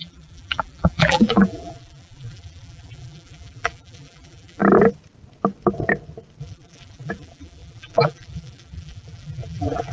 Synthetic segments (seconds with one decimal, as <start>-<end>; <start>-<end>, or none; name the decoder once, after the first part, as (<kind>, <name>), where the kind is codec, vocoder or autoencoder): 0.0-4.6 (vocoder, BigVGAN v2); 6.4-9.9